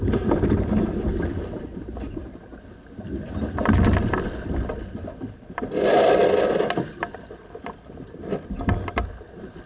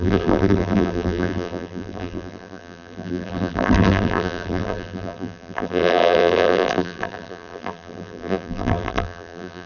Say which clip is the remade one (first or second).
second